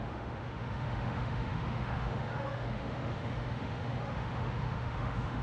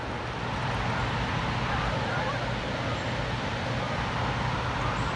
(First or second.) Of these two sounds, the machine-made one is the first